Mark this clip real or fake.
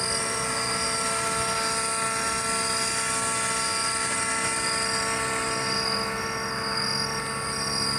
real